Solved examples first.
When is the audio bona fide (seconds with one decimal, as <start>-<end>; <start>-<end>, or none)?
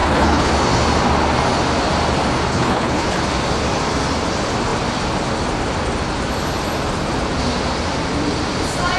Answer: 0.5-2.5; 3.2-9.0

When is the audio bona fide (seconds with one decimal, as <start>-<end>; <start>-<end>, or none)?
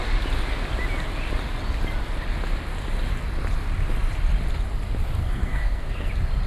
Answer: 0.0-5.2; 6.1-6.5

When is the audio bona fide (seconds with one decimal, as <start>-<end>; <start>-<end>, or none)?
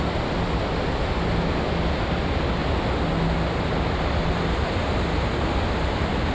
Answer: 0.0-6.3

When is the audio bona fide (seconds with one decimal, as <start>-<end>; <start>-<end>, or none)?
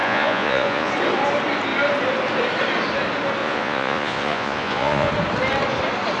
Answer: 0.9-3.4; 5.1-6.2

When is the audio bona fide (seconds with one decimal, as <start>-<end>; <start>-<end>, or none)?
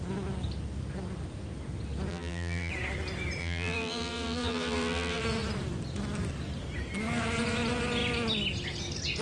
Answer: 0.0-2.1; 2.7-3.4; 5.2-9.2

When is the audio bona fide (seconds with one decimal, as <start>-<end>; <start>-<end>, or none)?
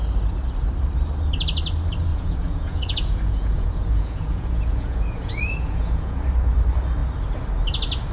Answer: 0.0-2.1; 6.3-8.1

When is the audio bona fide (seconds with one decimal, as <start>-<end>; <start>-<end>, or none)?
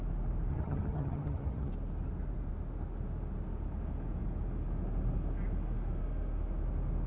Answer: 0.0-0.5; 1.7-7.1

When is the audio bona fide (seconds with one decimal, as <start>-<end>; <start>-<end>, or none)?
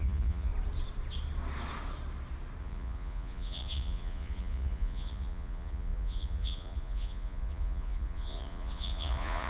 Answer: 0.5-2.6